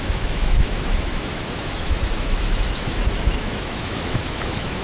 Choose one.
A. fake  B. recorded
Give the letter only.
A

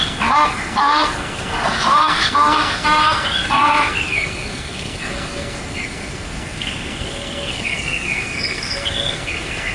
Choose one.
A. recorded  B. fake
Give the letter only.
B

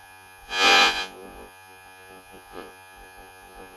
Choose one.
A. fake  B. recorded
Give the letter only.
A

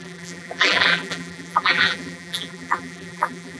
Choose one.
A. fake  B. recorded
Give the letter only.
A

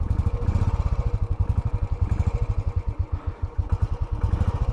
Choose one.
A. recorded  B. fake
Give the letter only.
A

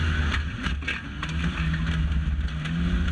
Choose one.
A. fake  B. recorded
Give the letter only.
B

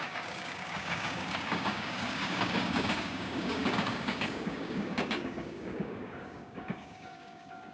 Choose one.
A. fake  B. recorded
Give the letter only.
A